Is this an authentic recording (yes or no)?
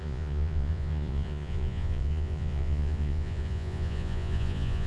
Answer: no